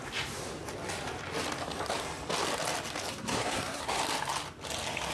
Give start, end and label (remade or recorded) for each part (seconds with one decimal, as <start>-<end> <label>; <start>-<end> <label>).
0.0-3.1 recorded; 3.1-4.0 remade; 4.0-5.1 recorded